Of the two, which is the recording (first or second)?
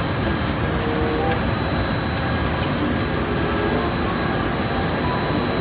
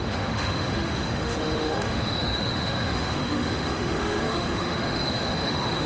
first